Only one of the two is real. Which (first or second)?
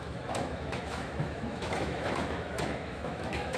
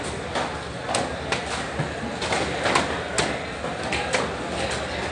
second